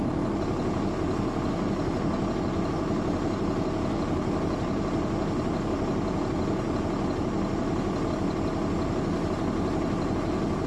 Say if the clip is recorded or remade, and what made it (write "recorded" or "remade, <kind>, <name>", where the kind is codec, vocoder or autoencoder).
recorded